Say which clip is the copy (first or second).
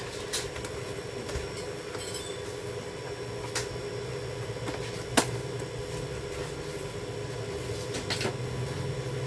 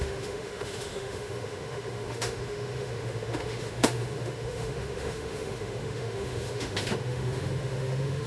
second